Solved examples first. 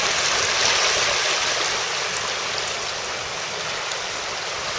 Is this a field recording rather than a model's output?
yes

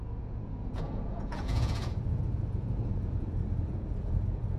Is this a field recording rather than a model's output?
no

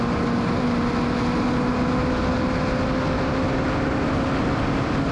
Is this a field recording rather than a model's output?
yes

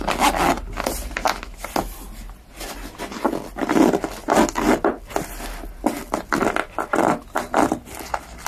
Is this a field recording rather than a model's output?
yes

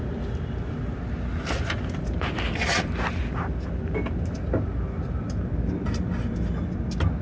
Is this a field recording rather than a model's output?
yes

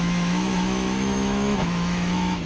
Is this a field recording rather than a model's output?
no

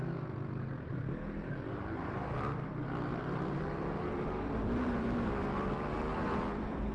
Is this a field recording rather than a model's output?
no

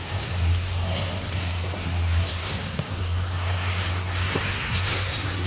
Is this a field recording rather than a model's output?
no